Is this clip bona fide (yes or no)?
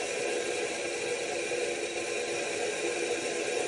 yes